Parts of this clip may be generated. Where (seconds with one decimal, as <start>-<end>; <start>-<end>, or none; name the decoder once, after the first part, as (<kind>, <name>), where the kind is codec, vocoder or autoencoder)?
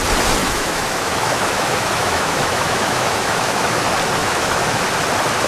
0.4-3.7 (autoencoder, DAC-VAE); 4.2-4.8